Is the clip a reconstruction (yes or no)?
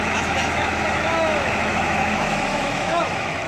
yes